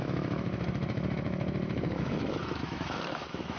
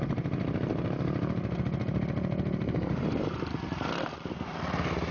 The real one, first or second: second